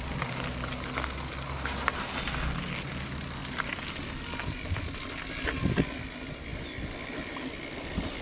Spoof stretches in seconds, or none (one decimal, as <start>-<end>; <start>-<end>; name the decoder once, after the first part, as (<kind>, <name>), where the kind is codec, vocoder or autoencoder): 3.4-3.9 (vocoder, BigVGAN v2)